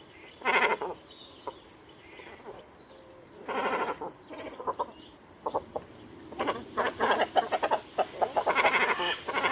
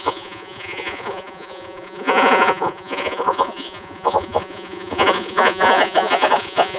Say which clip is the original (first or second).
first